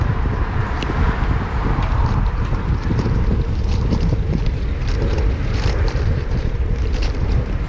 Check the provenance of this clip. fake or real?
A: fake